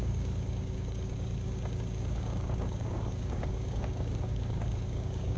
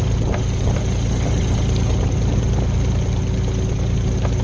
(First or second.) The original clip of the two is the second